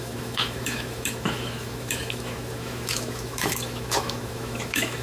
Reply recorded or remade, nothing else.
remade